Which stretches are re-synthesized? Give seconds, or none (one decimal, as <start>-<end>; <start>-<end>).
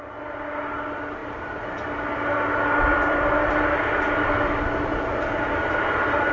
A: none